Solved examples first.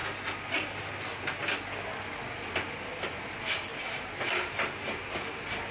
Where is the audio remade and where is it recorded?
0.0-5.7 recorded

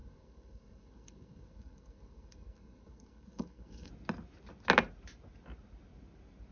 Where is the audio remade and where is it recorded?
0.0-3.9 remade; 3.9-6.5 recorded